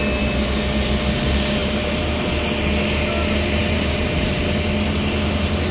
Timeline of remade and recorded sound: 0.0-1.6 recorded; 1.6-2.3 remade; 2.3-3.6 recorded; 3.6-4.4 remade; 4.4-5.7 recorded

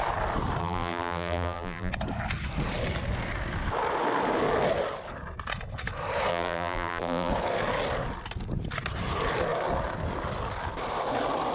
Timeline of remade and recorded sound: 0.0-0.6 recorded; 0.6-1.9 remade; 1.9-6.3 recorded; 6.3-7.3 remade; 7.3-11.5 recorded